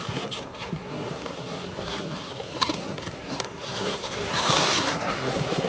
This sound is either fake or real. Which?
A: fake